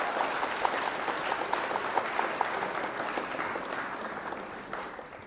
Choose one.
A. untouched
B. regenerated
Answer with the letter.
A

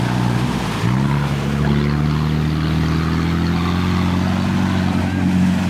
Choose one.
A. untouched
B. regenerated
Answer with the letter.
A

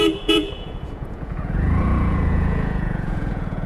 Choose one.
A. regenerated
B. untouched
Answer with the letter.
A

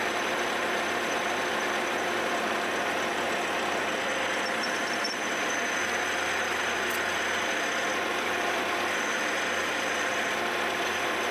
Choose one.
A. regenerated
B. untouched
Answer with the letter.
B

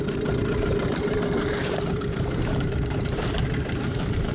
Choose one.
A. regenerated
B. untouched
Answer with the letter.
A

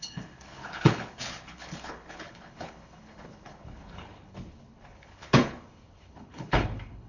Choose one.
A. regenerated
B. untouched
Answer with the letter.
A